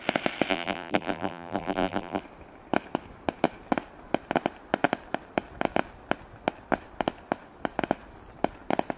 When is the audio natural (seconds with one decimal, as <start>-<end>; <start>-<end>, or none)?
0.0-0.5; 2.2-9.0

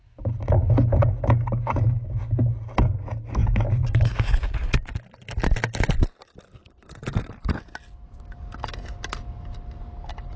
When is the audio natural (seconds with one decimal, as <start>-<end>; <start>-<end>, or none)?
0.0-3.4; 4.0-10.4